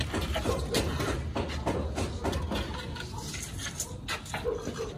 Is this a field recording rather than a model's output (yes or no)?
yes